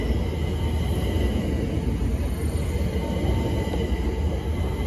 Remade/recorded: recorded